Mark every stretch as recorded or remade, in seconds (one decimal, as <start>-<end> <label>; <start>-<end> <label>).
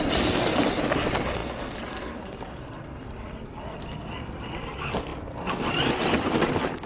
0.0-6.9 recorded